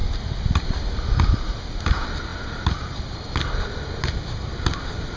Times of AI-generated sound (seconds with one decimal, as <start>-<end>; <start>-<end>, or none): none